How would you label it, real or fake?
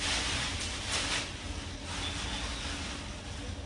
real